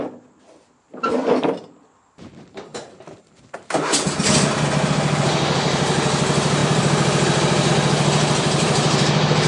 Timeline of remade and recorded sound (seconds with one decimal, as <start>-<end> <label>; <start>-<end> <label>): 0.0-0.7 remade; 0.7-1.4 recorded; 1.4-2.7 remade; 2.7-5.2 recorded; 5.2-9.5 remade